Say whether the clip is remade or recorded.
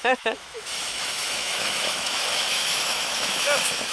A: remade